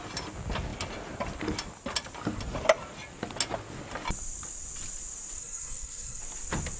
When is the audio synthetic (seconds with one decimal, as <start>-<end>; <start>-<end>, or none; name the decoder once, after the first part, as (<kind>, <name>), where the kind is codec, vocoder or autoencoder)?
5.4-6.2 (codec, SNAC)